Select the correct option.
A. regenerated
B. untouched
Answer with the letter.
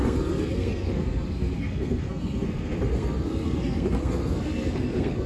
A